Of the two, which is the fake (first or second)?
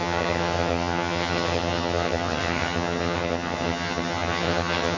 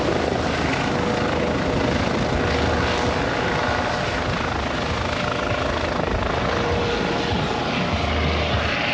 first